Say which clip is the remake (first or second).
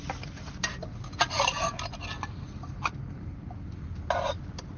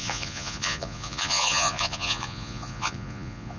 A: second